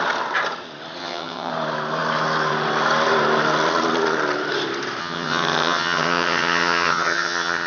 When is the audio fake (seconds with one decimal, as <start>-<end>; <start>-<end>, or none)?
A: 1.0-1.5; 5.0-7.7